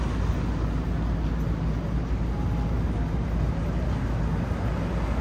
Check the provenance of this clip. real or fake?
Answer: real